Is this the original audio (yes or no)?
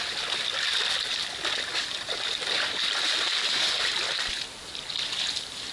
yes